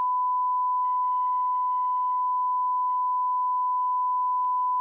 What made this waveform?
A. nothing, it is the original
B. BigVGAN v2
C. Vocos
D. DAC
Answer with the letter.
A